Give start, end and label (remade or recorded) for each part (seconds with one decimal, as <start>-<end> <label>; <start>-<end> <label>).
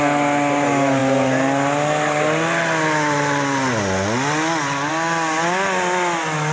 0.0-6.5 recorded